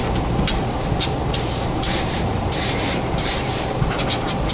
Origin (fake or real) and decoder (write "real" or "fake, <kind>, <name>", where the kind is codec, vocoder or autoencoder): fake, vocoder, BigVGAN v2